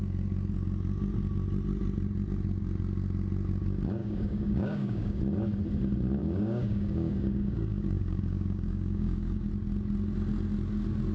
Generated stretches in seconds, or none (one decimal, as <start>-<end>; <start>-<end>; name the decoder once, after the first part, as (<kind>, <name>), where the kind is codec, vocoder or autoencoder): 4.0-5.2 (codec, DAC); 6.2-9.5